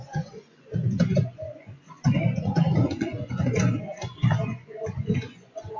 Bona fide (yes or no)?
no